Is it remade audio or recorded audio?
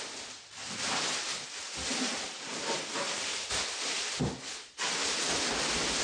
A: recorded